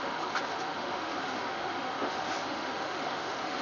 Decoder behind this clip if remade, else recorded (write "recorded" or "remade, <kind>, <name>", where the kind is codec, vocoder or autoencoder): remade, autoencoder, DAC-VAE